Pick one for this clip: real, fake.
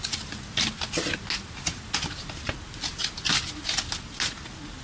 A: real